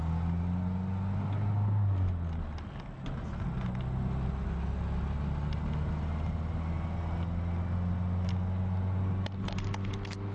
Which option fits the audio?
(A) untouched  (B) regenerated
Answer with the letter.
A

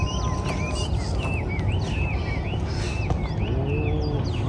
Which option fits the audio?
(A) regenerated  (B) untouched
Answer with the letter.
B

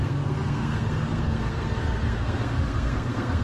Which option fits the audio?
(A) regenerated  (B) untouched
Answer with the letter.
A